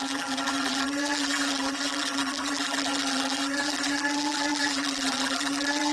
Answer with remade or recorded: remade